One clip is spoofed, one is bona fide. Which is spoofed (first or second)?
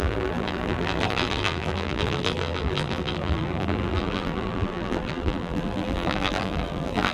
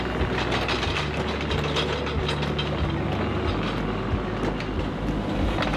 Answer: first